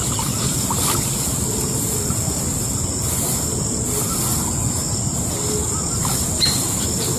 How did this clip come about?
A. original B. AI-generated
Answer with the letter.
A